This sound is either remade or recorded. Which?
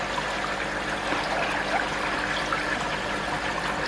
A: recorded